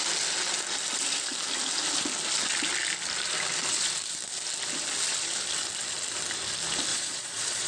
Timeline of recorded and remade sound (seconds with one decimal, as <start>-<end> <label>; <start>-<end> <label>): 0.0-6.9 recorded; 6.9-7.7 remade